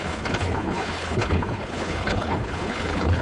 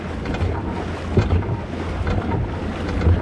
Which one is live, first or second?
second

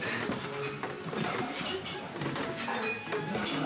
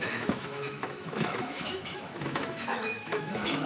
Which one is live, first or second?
first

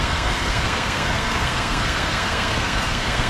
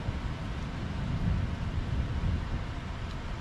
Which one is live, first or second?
second